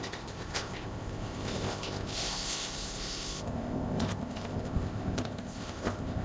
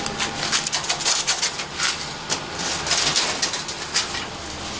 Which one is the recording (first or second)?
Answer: second